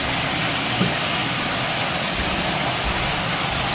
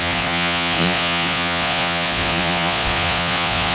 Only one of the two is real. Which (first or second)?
first